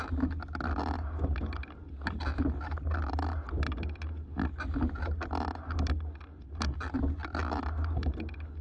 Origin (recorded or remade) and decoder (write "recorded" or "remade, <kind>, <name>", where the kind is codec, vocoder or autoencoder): recorded